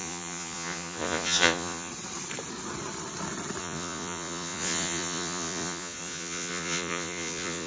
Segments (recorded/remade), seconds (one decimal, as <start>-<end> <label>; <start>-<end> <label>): 0.0-1.9 remade; 1.9-3.6 recorded; 3.6-7.7 remade